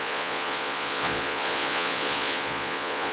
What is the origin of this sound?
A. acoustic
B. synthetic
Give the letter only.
B